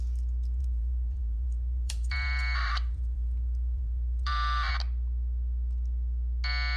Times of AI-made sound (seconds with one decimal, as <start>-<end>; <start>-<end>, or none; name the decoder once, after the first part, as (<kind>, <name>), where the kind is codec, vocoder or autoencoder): 0.6-4.7 (vocoder, BigVGAN v2)